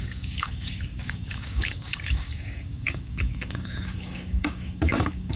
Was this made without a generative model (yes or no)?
no